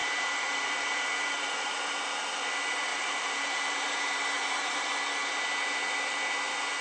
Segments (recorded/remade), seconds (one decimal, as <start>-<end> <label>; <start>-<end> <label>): 0.0-1.9 remade; 1.9-2.9 recorded; 2.9-4.9 remade; 4.9-6.8 recorded